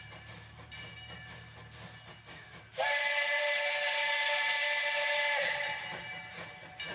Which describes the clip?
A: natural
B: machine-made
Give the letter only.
A